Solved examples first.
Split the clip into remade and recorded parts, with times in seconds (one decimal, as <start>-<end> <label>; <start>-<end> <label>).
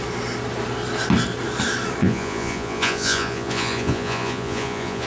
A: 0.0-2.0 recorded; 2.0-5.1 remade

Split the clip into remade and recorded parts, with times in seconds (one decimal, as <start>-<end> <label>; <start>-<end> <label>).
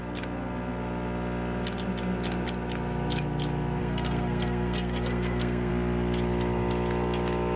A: 0.0-3.8 recorded; 3.8-5.7 remade; 5.7-7.6 recorded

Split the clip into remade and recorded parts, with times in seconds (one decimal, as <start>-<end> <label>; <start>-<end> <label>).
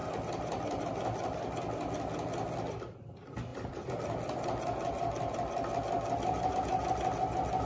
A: 0.0-7.7 recorded